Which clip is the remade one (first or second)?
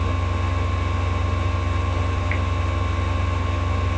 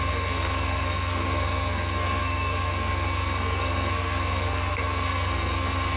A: second